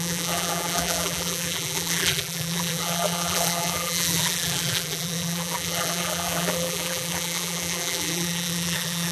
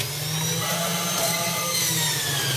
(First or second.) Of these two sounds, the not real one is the first